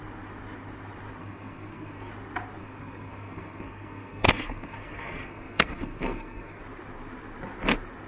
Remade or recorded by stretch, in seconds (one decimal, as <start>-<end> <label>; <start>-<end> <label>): 0.0-1.2 recorded; 1.2-2.1 remade; 2.1-2.6 recorded; 2.6-6.6 remade; 6.6-8.1 recorded